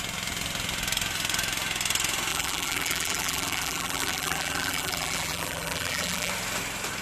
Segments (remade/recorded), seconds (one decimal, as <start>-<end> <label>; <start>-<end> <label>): 0.0-2.3 recorded; 2.3-6.3 remade; 6.3-7.0 recorded